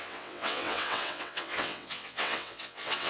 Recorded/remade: remade